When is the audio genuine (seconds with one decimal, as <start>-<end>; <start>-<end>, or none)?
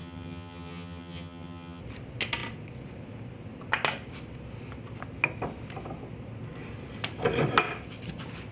1.8-8.5